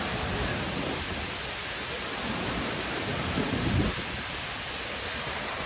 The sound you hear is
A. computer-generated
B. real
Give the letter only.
B